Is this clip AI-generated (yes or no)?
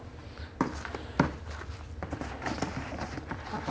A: no